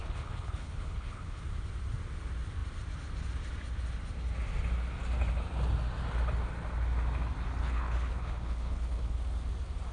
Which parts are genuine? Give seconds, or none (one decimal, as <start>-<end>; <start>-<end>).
1.4-7.6; 9.2-9.9